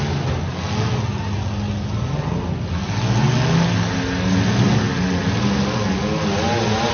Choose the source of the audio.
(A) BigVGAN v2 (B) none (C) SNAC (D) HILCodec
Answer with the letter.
B